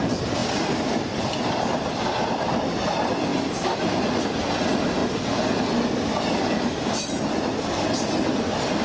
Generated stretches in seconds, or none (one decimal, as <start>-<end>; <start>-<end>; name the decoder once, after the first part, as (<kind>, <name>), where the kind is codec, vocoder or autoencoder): 0.4-1.0 (vocoder, BigVGAN v2); 5.0-8.8